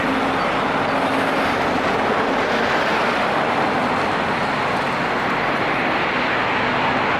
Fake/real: real